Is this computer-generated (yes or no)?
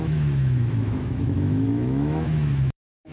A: yes